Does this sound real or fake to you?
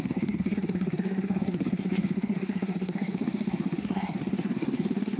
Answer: fake